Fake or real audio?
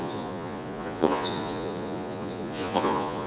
fake